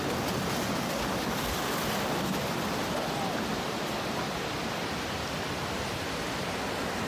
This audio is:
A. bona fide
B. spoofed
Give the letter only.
A